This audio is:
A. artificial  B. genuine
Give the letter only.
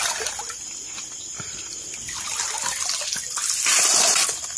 B